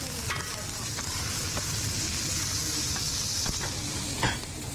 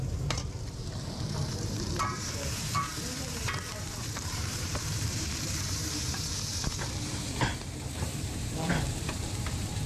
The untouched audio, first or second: first